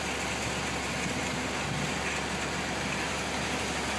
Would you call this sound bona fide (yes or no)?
yes